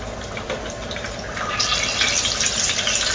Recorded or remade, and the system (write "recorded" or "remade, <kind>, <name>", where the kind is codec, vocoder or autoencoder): recorded